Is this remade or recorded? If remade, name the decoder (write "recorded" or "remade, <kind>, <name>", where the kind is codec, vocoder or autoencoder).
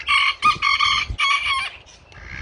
recorded